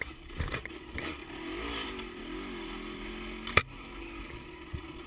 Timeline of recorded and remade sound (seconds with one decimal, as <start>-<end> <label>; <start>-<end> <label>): 0.0-1.2 remade; 1.2-4.3 recorded; 4.3-5.1 remade

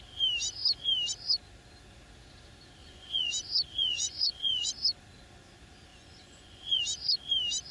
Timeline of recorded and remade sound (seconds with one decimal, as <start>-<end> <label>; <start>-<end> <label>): 0.0-2.8 recorded; 2.8-3.3 remade; 3.3-3.8 recorded; 3.8-4.7 remade; 4.7-5.9 recorded; 5.9-6.8 remade; 6.8-7.7 recorded

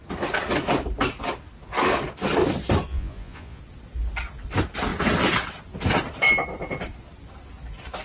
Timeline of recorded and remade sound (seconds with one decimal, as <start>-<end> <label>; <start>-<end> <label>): 0.0-2.9 recorded; 2.9-3.6 remade; 3.6-8.0 recorded

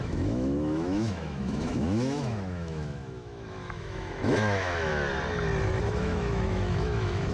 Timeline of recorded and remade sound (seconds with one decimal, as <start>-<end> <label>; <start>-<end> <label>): 0.0-4.9 remade; 4.9-5.8 recorded; 5.8-7.3 remade

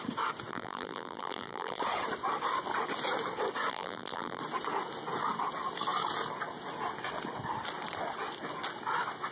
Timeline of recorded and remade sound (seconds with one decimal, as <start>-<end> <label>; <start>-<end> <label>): 0.0-0.5 recorded; 0.5-1.8 remade; 1.8-3.7 recorded; 3.7-4.4 remade; 4.4-9.3 recorded

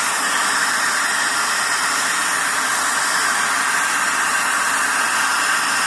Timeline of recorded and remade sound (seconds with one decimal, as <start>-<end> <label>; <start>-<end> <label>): 0.0-5.9 recorded